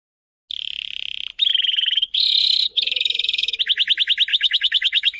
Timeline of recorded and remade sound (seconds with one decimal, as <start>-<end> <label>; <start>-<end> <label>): 0.0-1.5 recorded; 1.5-3.6 remade; 3.6-4.3 recorded; 4.3-5.2 remade